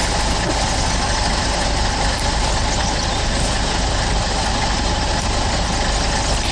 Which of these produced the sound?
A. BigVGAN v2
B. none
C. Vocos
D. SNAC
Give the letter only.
B